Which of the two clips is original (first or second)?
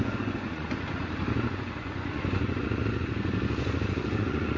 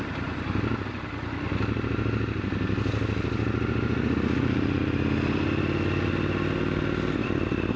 second